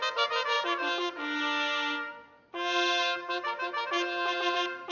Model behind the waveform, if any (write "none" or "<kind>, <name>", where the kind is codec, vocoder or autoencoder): none